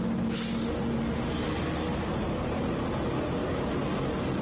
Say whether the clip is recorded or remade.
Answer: recorded